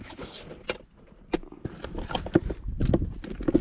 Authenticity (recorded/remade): recorded